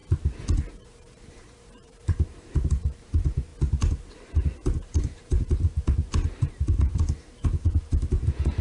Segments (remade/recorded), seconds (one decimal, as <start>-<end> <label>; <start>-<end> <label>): 0.0-0.8 recorded; 0.8-3.5 remade; 3.5-4.1 recorded; 4.1-8.6 remade